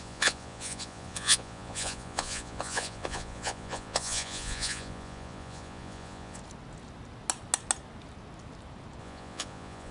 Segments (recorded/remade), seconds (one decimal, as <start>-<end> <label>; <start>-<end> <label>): 0.0-6.4 remade; 6.4-9.0 recorded; 9.0-9.9 remade